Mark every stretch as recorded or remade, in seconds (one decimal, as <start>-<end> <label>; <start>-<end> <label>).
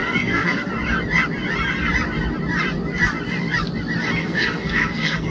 0.0-0.7 remade; 0.7-4.2 recorded; 4.2-5.3 remade